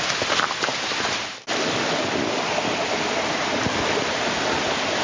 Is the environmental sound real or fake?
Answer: fake